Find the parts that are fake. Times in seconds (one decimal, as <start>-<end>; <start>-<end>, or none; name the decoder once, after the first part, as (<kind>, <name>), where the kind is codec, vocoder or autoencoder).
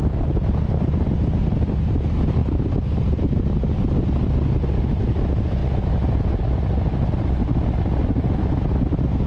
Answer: none